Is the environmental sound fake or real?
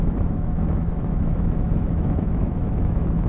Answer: fake